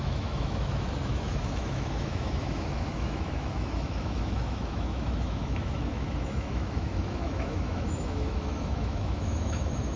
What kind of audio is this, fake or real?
fake